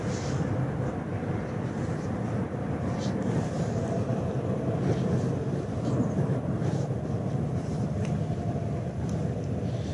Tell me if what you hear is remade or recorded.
remade